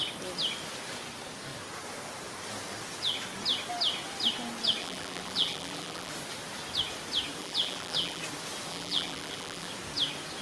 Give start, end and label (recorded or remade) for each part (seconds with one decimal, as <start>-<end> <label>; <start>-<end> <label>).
0.0-4.8 recorded; 4.8-6.1 remade; 6.1-7.4 recorded; 7.4-8.2 remade; 8.2-8.7 recorded; 8.7-9.7 remade; 9.7-10.4 recorded